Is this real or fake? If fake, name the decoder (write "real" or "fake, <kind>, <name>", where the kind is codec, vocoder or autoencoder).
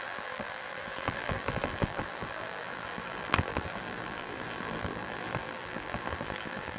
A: fake, vocoder, BigVGAN v2